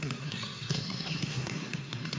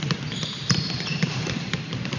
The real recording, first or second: second